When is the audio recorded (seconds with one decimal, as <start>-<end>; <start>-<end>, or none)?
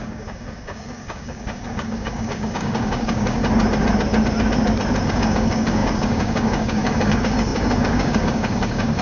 3.4-5.1